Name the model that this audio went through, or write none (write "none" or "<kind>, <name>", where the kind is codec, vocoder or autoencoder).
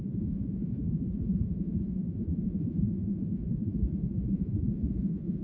vocoder, Vocos